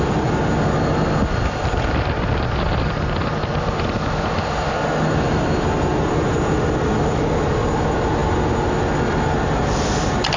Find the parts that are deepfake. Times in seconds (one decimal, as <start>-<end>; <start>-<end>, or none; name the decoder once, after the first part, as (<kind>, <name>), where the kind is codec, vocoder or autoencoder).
none